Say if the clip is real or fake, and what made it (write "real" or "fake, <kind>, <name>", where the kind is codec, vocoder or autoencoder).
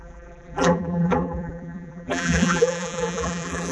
fake, vocoder, BigVGAN v2